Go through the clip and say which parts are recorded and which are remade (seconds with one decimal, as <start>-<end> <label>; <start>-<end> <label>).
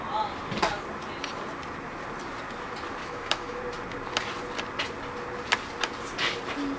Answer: 0.0-3.0 recorded; 3.0-3.6 remade; 3.6-6.8 recorded